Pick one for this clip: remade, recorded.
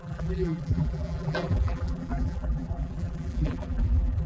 remade